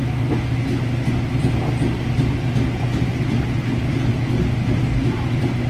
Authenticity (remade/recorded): recorded